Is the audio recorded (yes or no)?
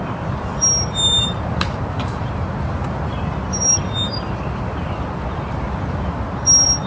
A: yes